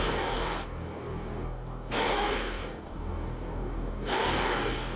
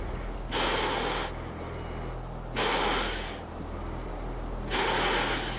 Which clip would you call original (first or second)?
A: second